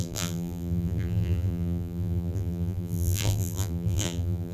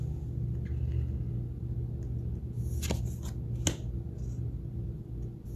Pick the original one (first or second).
second